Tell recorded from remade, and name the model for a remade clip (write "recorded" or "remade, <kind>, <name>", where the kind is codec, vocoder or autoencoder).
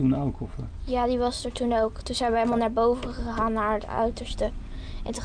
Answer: recorded